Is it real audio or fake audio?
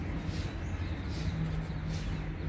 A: real